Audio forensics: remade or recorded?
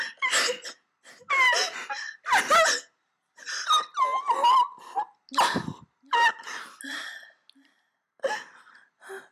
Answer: recorded